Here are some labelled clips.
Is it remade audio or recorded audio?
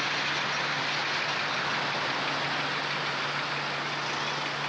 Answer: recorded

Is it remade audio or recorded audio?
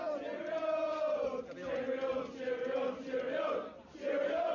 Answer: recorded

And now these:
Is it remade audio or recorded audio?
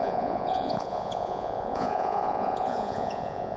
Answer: remade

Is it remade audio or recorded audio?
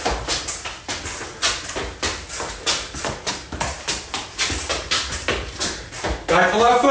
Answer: recorded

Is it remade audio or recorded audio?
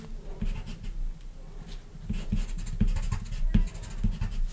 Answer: recorded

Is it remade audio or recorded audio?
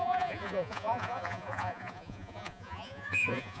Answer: remade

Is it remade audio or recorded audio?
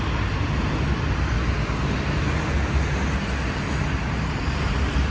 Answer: recorded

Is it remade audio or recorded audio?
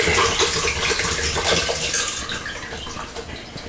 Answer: recorded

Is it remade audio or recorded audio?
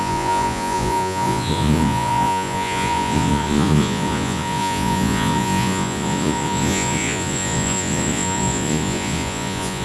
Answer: remade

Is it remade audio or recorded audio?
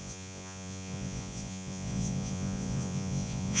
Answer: remade